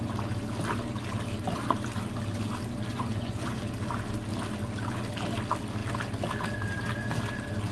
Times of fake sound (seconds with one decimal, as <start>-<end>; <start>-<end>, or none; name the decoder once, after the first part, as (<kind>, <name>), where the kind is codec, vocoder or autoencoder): 2.9-3.6 (vocoder, Vocos)